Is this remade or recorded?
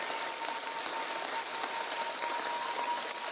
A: recorded